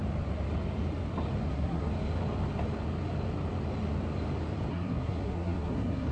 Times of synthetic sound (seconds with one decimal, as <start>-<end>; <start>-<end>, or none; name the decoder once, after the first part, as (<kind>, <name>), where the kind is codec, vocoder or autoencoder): 1.5-1.9 (codec, SNAC); 4.7-6.1